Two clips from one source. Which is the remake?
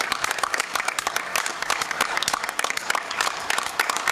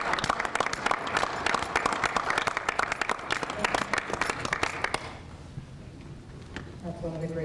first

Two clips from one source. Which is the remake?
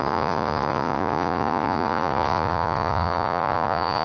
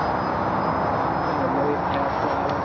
first